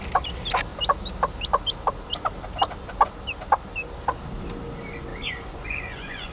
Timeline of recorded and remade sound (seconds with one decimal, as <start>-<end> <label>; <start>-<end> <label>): 0.0-5.1 recorded; 5.1-6.3 remade